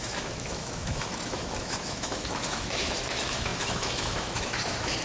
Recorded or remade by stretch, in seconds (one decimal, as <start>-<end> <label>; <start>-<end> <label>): 0.0-5.0 remade